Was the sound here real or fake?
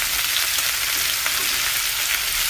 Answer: real